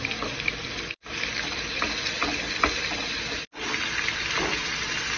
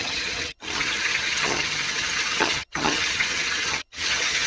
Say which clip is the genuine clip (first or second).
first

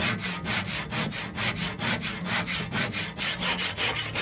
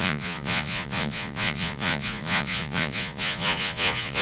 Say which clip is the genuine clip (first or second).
first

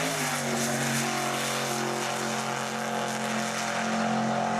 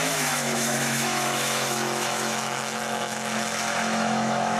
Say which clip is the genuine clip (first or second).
first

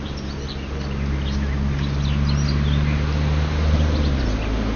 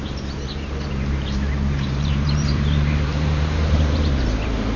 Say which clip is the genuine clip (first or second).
first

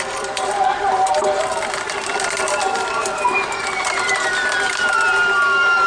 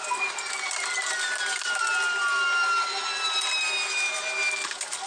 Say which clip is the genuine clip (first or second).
second